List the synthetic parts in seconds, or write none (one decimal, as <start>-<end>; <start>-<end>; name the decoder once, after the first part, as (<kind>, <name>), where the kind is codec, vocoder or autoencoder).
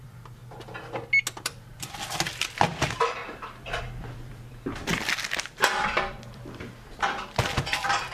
0.0-0.4 (vocoder, BigVGAN v2); 1.4-8.1